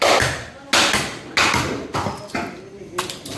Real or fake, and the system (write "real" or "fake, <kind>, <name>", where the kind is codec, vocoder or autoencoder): real